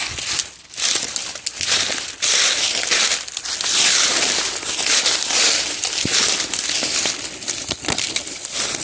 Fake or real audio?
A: real